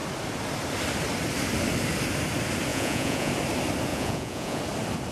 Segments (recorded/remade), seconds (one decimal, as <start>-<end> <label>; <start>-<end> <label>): 0.0-2.7 recorded; 2.7-3.3 remade; 3.3-3.9 recorded; 3.9-4.6 remade; 4.6-5.1 recorded